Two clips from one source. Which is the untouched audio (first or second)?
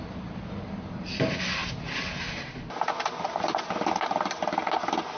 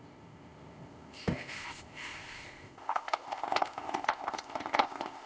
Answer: first